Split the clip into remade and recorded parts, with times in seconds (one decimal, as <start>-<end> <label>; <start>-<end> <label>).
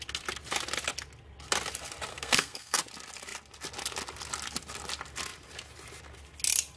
0.0-2.1 recorded; 2.1-2.8 remade; 2.8-6.8 recorded